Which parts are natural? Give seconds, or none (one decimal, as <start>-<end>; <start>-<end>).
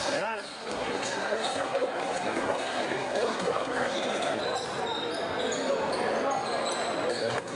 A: 4.4-7.1